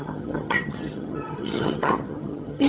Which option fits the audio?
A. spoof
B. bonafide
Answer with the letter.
A